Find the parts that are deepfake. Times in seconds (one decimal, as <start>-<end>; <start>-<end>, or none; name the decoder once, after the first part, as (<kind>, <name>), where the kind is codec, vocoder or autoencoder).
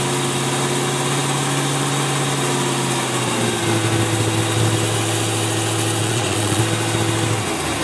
6.0-6.6 (vocoder, Vocos)